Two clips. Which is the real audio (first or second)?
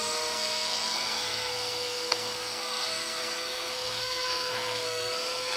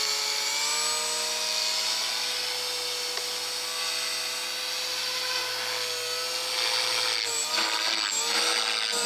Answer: second